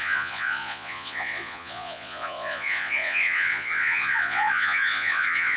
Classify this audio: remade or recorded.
remade